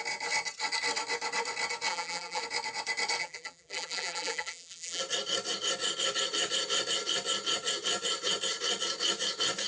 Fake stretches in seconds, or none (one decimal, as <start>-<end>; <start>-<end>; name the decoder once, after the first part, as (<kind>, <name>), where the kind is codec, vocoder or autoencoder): 1.9-2.4 (vocoder, BigVGAN v2); 3.2-5.0